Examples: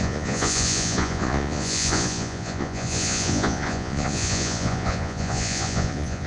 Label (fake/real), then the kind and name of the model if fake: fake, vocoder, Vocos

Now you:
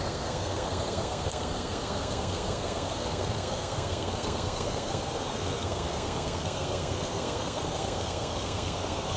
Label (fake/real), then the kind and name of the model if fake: fake, codec, SNAC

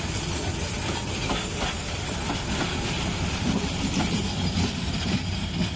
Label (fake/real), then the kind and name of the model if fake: real